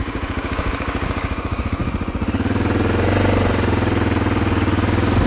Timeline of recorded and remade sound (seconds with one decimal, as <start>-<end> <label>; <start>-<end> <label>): 0.0-1.8 remade; 1.8-5.3 recorded